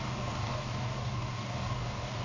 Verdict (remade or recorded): remade